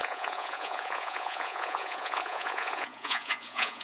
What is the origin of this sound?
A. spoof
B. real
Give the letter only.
A